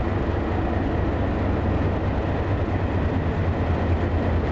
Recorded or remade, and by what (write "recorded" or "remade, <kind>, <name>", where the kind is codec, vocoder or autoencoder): recorded